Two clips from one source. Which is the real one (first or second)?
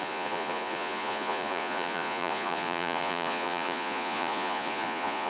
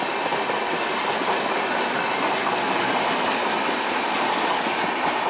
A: second